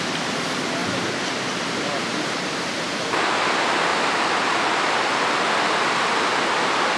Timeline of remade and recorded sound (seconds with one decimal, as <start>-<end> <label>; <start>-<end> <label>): 0.0-7.0 recorded

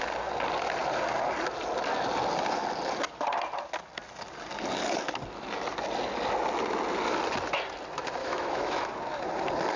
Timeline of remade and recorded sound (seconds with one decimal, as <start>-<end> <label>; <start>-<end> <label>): 0.0-8.2 recorded; 8.2-8.9 remade; 8.9-9.8 recorded

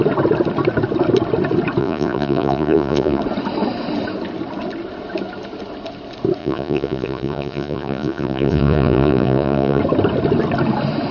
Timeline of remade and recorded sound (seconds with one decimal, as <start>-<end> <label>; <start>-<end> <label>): 0.0-1.8 recorded; 1.8-3.2 remade; 3.2-6.4 recorded; 6.4-9.8 remade; 9.8-11.1 recorded

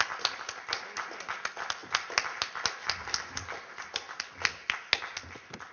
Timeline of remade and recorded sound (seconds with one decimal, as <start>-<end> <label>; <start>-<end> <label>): 0.0-5.7 recorded

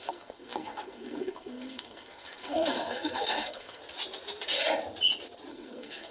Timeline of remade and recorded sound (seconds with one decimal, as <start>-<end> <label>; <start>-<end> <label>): 0.0-3.8 remade; 3.8-5.5 recorded; 5.5-6.1 remade

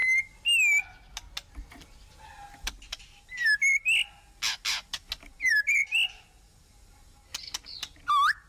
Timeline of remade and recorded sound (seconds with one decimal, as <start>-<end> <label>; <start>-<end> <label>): 0.0-8.5 recorded

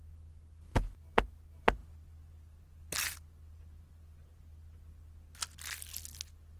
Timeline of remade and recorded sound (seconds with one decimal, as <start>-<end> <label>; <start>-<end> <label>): 0.0-6.6 recorded